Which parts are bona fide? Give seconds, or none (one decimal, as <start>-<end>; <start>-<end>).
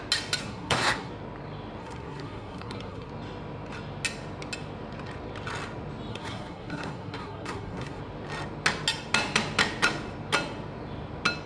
0.0-0.4; 1.1-1.8; 3.1-6.1; 8.0-11.5